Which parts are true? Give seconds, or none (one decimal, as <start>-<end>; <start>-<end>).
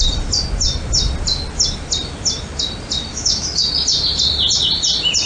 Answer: 0.0-3.1; 3.7-5.3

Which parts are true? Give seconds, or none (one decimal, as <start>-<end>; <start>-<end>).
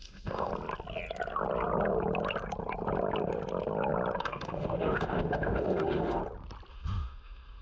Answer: 0.5-4.2; 6.2-6.7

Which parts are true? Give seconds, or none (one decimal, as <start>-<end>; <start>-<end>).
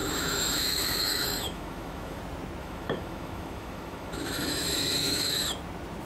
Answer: 2.2-2.6; 5.4-6.1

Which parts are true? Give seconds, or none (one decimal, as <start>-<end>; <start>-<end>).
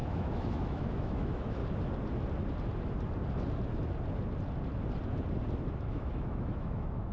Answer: 1.6-5.9